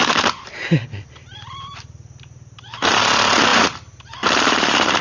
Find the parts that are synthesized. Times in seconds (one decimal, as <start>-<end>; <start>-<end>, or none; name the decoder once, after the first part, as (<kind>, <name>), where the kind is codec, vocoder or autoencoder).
0.0-5.0 (vocoder, BigVGAN v2)